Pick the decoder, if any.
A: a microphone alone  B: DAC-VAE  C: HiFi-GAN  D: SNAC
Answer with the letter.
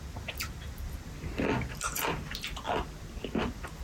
A